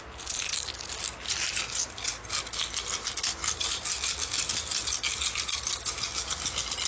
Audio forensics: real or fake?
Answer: real